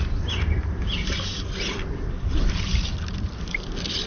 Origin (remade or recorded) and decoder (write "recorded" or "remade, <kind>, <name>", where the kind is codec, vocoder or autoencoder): recorded